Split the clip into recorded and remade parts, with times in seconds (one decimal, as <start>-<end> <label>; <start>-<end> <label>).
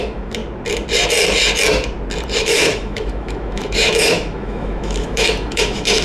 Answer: 0.0-0.4 remade; 0.4-2.4 recorded; 2.4-6.0 remade